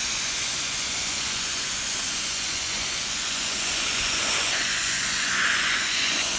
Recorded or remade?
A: remade